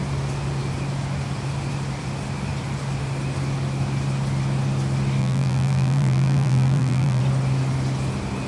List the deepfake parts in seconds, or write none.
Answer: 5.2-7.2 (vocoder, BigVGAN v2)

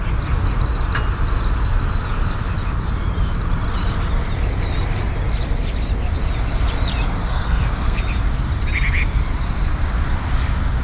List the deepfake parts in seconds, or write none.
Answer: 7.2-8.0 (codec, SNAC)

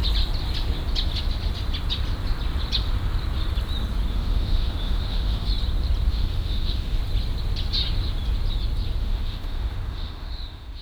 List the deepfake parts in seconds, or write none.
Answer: 4.1-5.5 (autoencoder, DAC-VAE); 6.1-7.0; 9.0-10.8

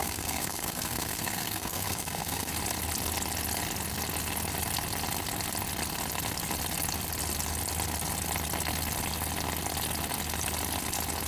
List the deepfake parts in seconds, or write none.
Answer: 0.0-2.5 (codec, SNAC)

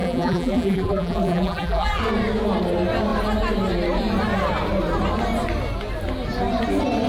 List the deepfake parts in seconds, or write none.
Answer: 0.0-2.0 (vocoder, BigVGAN v2)

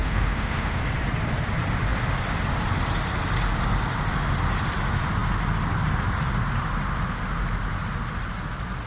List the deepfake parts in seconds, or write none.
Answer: 0.0-0.8 (autoencoder, DAC-VAE)

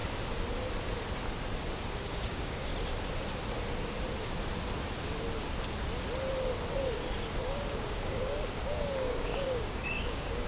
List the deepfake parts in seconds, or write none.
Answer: 1.9-2.7 (codec, DAC); 7.5-10.5